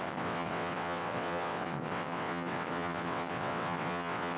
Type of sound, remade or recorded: remade